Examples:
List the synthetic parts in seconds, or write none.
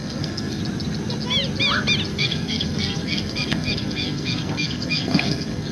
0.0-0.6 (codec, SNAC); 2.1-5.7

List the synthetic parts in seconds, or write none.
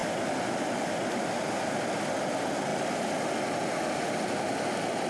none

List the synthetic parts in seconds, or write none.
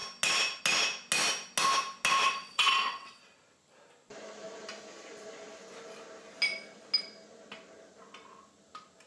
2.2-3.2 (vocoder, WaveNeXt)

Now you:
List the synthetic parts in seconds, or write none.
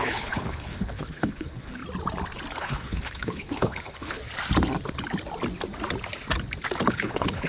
0.0-1.8 (codec, HILCodec); 2.6-4.2; 6.9-7.5